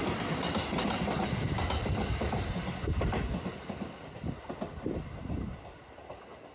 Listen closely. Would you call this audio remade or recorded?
recorded